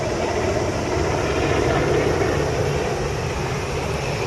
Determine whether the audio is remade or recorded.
recorded